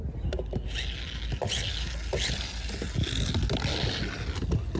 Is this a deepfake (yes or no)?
no